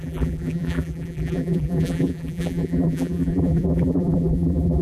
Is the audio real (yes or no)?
no